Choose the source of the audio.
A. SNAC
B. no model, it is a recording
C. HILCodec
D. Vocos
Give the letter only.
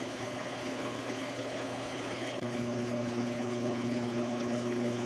C